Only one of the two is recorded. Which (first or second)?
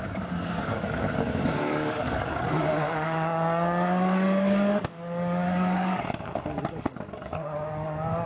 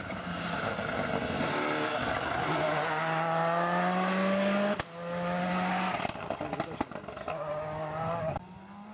second